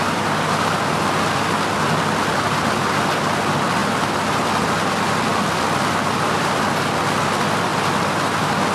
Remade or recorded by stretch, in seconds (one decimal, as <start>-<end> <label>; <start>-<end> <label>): 0.0-8.7 recorded